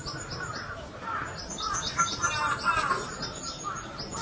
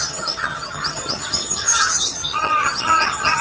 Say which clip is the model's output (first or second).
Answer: second